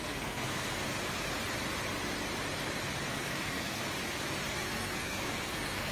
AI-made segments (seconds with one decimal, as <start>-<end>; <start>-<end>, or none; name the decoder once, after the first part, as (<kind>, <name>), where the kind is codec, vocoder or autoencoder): 0.0-0.8 (codec, SNAC); 3.1-3.8; 4.5-5.9